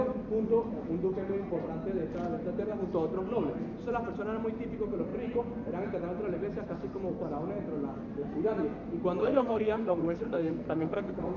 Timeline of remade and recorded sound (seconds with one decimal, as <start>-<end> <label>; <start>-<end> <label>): 0.0-9.2 recorded; 9.2-11.4 remade